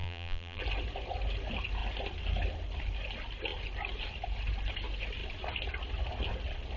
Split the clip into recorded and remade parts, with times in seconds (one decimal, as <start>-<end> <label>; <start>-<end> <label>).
0.0-0.6 remade; 0.6-6.8 recorded